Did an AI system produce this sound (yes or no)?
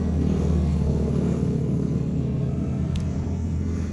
yes